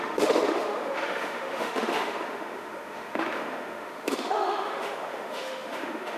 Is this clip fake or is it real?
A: fake